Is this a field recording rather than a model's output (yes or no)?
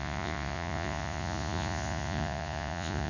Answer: no